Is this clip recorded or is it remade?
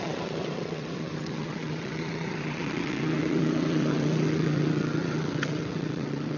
remade